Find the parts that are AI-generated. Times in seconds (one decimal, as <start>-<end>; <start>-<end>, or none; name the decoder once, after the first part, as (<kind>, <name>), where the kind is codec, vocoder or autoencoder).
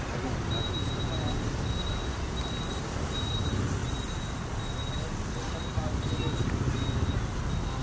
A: none